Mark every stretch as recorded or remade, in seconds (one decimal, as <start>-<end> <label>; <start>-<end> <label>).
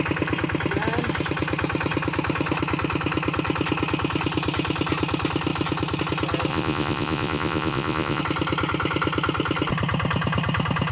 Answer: 0.0-6.5 recorded; 6.5-8.2 remade; 8.2-10.9 recorded